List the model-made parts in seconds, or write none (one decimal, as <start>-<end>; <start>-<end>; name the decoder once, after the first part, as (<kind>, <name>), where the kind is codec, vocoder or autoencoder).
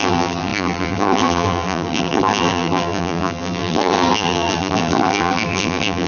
0.0-6.1 (vocoder, BigVGAN v2)